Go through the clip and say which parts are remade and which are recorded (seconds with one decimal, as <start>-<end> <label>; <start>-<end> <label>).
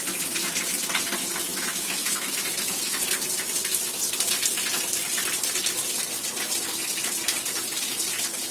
0.0-1.5 recorded; 1.5-3.0 remade; 3.0-8.5 recorded